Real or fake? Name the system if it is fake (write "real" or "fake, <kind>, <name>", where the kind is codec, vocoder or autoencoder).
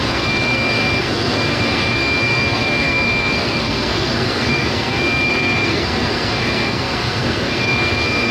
fake, codec, SNAC